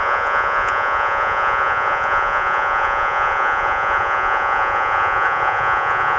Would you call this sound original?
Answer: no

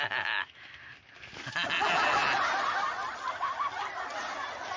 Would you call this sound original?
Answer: yes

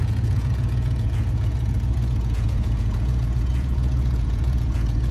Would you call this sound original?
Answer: no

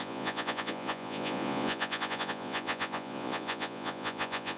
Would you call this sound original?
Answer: no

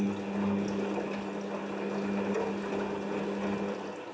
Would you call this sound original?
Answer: yes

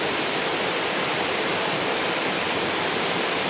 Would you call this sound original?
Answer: yes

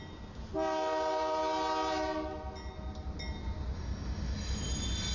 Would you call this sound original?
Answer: yes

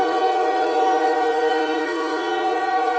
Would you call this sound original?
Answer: no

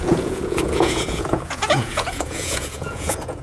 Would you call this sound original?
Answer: no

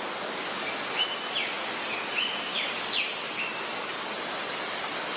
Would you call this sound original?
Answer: yes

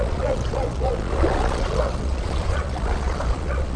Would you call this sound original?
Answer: no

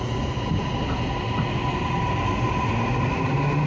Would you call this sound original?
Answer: yes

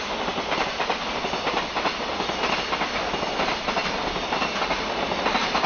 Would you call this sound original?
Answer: yes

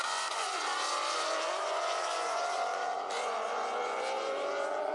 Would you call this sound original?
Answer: no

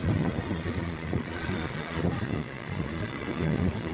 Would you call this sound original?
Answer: no